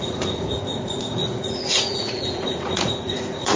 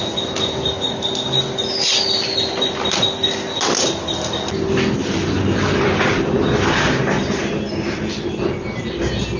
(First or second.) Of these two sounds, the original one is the second